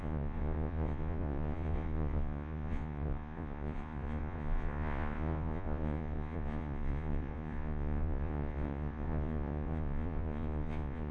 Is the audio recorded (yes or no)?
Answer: no